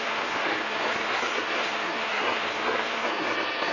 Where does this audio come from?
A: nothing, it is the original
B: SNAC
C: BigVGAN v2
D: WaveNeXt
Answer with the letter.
B